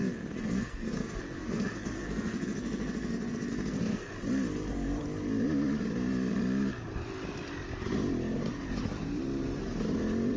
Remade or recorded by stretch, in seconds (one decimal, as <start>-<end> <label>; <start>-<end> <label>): 0.0-4.1 remade; 4.1-10.4 recorded